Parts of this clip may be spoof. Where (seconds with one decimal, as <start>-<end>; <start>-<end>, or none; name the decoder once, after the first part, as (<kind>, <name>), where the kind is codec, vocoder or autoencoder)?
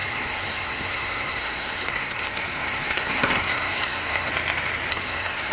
0.0-4.3 (codec, SNAC); 4.9-5.5